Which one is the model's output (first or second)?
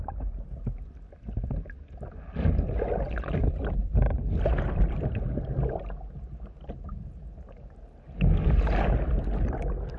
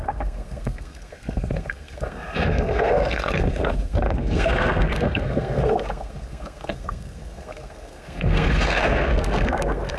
second